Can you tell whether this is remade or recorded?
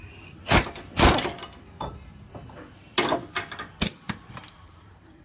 remade